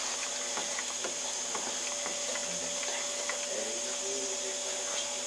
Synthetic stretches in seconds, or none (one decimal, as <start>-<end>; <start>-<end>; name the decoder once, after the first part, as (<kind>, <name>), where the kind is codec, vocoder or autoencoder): 0.6-1.2 (vocoder, BigVGAN v2)